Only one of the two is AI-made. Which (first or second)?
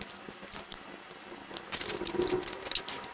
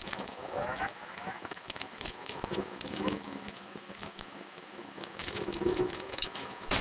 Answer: second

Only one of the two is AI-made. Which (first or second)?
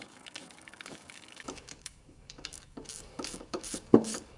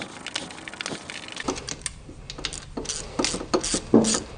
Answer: first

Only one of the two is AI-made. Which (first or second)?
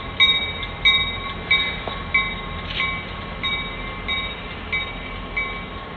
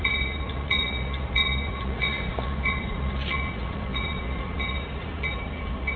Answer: second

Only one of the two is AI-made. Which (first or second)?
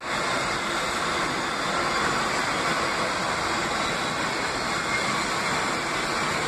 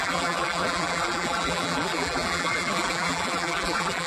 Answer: second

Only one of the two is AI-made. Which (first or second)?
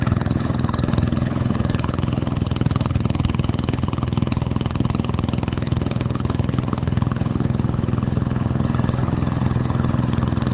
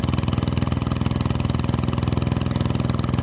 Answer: first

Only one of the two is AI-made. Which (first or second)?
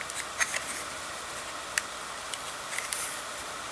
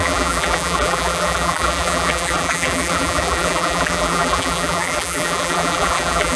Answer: second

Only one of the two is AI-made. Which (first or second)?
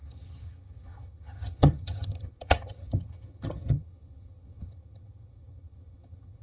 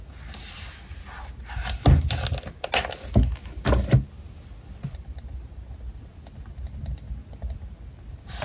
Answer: first